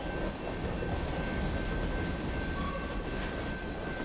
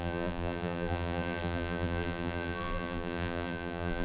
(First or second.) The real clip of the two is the first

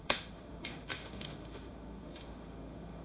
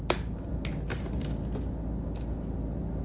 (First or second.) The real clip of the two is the second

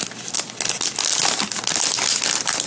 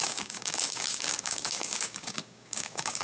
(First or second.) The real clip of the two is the first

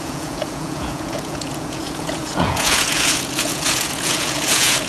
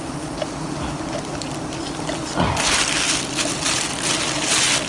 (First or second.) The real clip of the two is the second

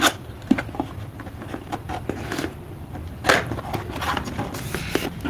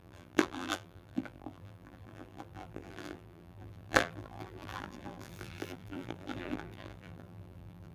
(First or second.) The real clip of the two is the first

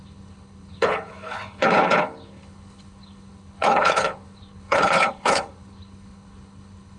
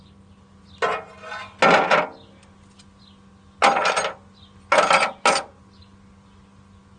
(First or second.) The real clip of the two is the second